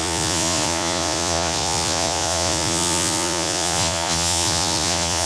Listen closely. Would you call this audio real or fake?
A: fake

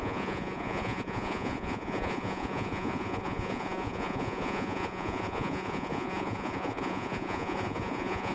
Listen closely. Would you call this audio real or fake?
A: fake